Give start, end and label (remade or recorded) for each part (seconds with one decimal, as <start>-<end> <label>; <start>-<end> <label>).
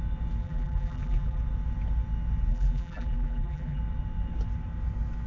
0.0-0.4 recorded; 0.4-1.4 remade; 1.4-2.5 recorded; 2.5-3.8 remade; 3.8-5.3 recorded